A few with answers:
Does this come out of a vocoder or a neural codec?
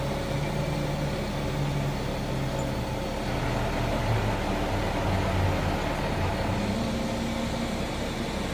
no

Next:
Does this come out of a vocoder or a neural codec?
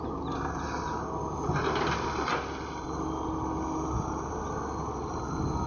no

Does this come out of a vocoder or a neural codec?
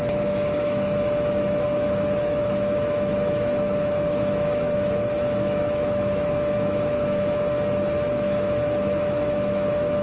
yes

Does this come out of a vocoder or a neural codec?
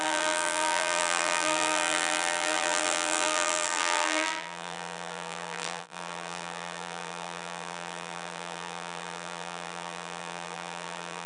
yes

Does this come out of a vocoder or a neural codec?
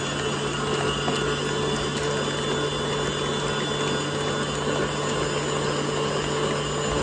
no